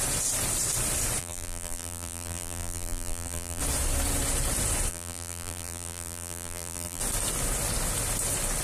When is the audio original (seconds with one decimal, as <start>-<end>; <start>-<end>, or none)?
0.0-1.2; 3.6-4.9; 7.0-8.6